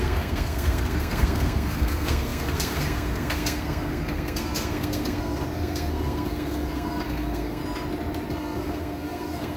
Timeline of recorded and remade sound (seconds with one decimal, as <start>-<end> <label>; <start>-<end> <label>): 0.0-7.6 remade; 7.6-8.3 recorded; 8.3-9.6 remade